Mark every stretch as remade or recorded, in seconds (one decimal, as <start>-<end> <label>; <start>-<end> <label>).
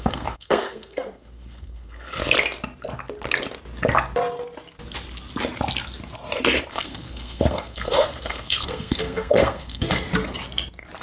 0.0-2.2 remade; 2.2-6.7 recorded; 6.7-10.1 remade; 10.1-11.0 recorded